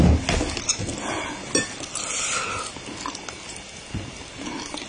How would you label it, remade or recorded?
recorded